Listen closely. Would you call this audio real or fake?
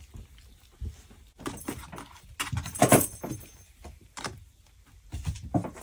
real